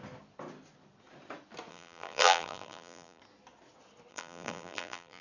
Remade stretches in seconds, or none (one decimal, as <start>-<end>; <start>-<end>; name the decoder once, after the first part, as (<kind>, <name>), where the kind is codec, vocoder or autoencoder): 1.7-3.2 (vocoder, BigVGAN v2); 4.1-5.2